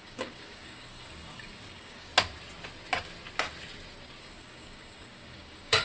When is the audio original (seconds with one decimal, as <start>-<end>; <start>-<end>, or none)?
2.1-4.2